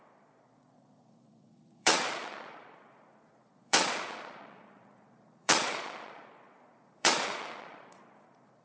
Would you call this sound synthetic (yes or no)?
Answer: yes